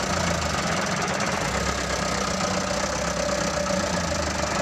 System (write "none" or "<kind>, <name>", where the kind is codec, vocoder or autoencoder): none